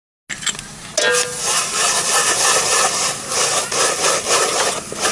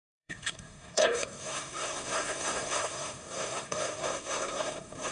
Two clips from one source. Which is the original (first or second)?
first